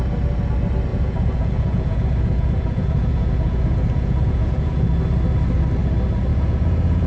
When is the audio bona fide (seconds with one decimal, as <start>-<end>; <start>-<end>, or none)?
0.0-0.9; 4.9-6.3